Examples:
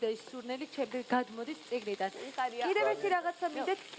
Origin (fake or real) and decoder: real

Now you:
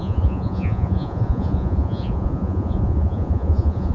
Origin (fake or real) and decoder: fake, vocoder, Vocos